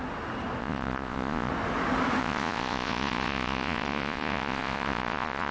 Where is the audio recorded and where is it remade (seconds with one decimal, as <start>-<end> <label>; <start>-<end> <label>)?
0.0-0.6 recorded; 0.6-1.5 remade; 1.5-2.2 recorded; 2.2-5.5 remade